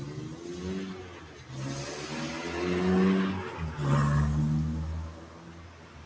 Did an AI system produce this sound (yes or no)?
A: no